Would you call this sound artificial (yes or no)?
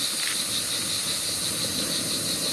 no